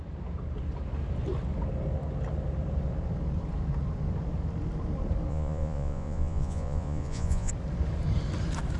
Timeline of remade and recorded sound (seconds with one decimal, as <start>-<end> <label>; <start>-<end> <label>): 0.0-5.3 recorded; 5.3-7.5 remade; 7.5-8.8 recorded